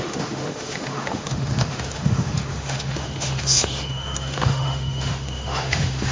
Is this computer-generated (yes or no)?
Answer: yes